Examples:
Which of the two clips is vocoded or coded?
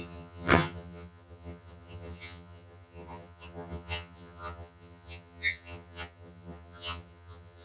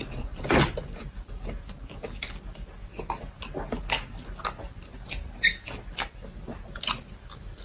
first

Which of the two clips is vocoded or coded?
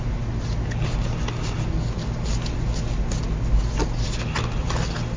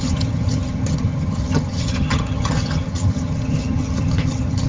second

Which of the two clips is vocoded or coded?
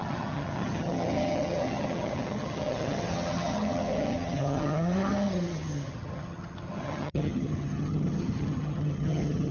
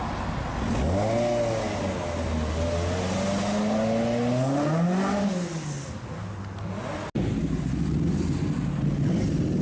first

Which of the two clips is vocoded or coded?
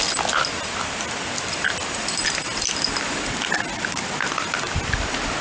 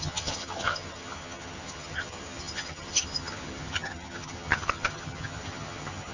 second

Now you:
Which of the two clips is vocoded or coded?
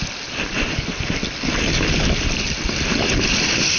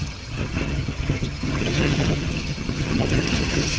second